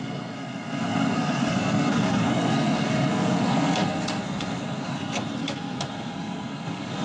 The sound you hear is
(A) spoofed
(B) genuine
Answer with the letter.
A